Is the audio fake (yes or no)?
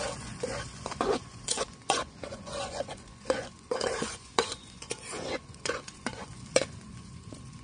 yes